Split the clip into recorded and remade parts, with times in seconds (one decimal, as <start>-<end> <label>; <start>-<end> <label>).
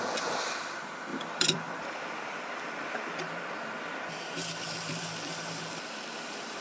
0.0-1.1 recorded; 1.1-5.1 remade; 5.1-6.6 recorded